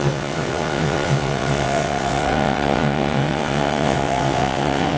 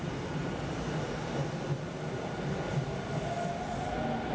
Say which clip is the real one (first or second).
second